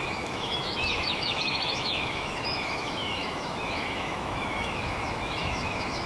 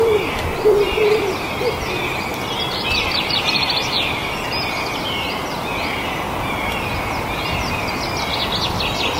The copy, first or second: first